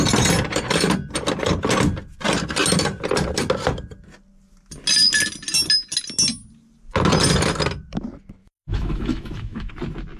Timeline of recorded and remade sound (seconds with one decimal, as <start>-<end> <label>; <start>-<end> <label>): 0.0-8.4 recorded; 8.4-9.7 remade; 9.7-10.2 recorded